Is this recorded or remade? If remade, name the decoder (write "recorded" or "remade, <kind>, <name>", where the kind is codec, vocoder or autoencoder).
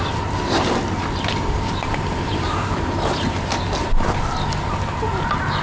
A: recorded